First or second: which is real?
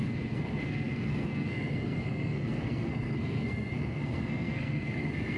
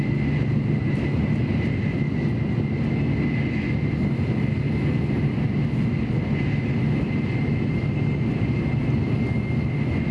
second